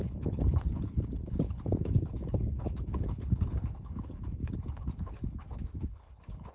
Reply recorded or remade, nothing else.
remade